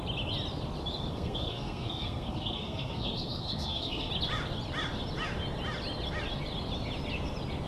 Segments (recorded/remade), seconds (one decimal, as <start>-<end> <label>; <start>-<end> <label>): 0.0-1.1 recorded; 1.1-4.1 remade; 4.1-7.7 recorded